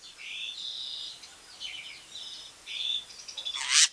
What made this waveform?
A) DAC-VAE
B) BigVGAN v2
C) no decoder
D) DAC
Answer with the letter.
C